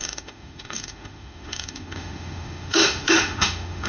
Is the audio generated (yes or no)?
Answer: yes